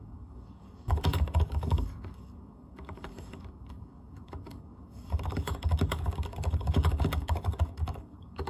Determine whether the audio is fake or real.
fake